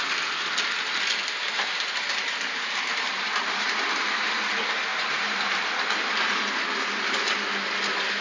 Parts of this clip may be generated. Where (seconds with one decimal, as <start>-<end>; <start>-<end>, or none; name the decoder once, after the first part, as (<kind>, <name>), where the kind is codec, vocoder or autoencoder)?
1.4-4.2 (vocoder, BigVGAN v2); 4.9-6.3